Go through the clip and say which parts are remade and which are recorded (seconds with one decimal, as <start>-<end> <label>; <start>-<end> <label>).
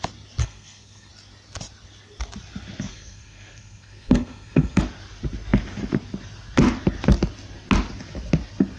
0.0-0.4 recorded; 0.4-1.1 remade; 1.1-2.9 recorded; 2.9-4.8 remade; 4.8-8.8 recorded